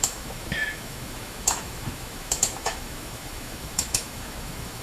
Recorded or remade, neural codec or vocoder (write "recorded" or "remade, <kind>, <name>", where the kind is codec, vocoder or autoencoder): remade, autoencoder, DAC-VAE